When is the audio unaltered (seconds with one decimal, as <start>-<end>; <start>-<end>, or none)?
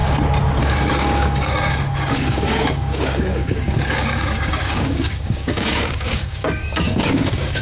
0.0-0.6